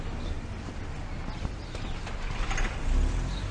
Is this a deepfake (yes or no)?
no